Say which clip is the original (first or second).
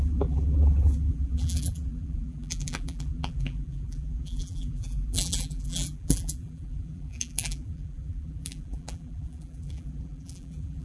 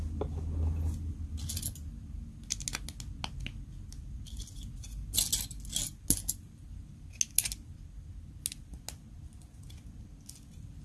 second